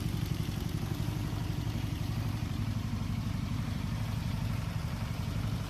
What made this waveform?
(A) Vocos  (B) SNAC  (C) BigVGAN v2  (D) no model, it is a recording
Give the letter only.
C